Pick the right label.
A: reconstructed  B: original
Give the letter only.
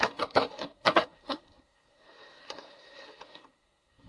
A